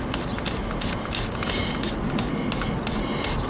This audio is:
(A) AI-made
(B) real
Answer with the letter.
B